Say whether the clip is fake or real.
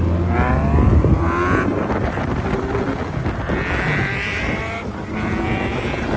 real